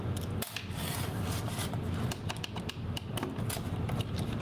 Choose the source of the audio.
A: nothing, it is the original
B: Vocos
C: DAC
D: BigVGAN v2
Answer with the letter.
A